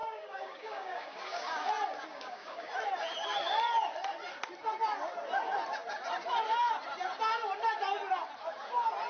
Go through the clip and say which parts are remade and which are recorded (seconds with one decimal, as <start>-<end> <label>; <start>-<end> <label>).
0.0-1.7 remade; 1.7-2.1 recorded; 2.1-2.7 remade; 2.7-9.1 recorded